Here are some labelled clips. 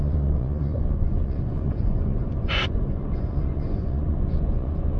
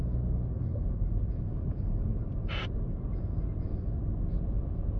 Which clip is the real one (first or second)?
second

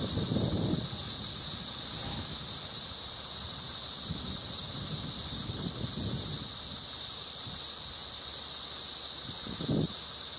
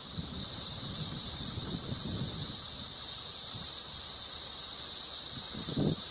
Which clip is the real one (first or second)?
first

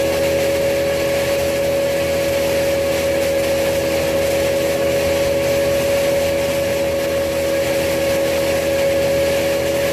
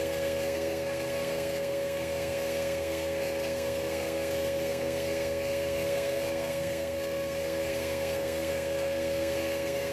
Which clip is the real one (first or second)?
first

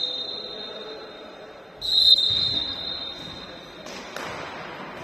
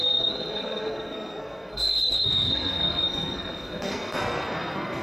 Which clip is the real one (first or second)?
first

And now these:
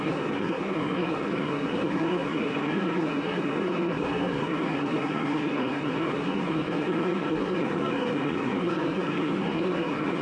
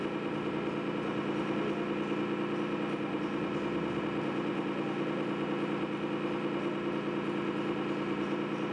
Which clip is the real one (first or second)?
second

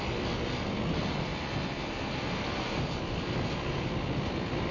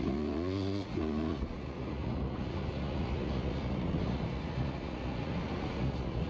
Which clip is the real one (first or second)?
first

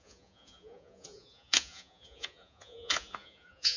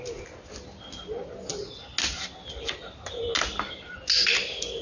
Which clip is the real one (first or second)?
second